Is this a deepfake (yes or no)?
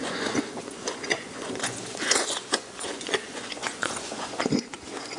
yes